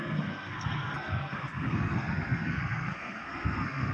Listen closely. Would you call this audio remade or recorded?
remade